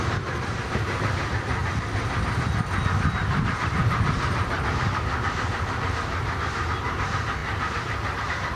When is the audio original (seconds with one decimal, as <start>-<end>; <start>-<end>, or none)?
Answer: 1.6-4.8